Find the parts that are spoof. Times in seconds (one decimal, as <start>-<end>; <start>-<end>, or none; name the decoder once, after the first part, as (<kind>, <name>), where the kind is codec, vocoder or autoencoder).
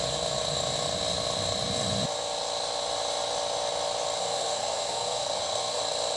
4.2-5.8 (codec, SNAC)